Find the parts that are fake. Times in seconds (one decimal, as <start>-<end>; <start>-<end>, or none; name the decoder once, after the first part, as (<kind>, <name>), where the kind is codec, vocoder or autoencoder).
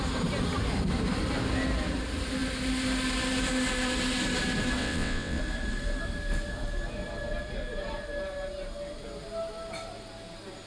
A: 4.8-5.4 (vocoder, WaveNeXt)